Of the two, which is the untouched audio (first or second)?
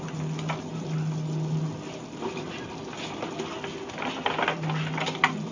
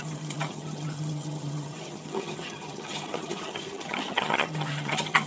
first